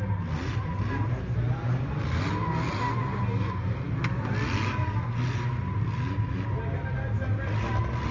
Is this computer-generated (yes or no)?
no